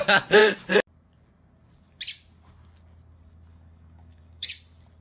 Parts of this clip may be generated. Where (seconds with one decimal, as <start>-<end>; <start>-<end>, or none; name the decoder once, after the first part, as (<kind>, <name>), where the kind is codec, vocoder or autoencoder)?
3.5-4.5 (codec, DAC)